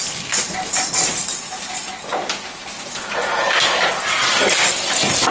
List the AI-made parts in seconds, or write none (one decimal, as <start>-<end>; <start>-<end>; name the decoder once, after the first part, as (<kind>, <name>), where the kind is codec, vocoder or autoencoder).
none